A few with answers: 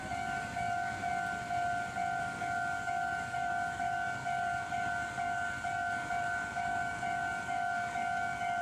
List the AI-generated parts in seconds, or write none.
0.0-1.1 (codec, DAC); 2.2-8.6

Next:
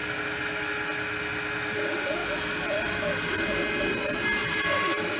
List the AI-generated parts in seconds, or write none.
4.4-5.2 (vocoder, BigVGAN v2)

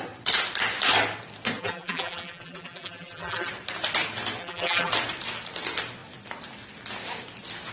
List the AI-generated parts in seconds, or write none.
1.6-3.5 (vocoder, BigVGAN v2); 4.4-4.9